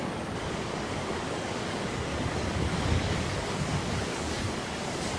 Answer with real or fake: fake